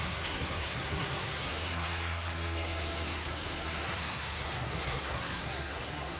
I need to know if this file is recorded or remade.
remade